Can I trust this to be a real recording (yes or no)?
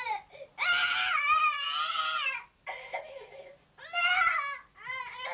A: yes